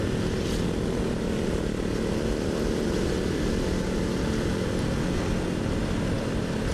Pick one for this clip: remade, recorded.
recorded